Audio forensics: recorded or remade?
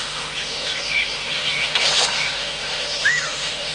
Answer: remade